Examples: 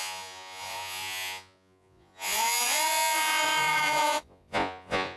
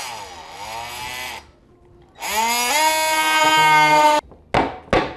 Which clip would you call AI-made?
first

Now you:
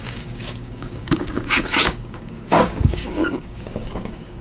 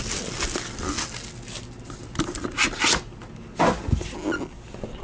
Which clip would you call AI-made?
first